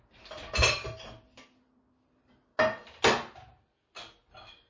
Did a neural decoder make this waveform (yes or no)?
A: no